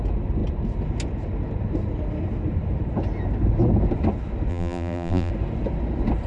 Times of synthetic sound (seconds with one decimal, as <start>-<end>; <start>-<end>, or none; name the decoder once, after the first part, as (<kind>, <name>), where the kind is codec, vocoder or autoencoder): 4.5-5.3 (vocoder, BigVGAN v2)